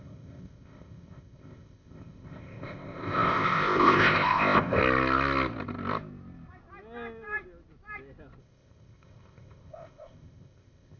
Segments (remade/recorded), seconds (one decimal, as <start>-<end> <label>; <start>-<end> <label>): 0.0-4.8 remade; 4.8-8.4 recorded; 8.4-11.0 remade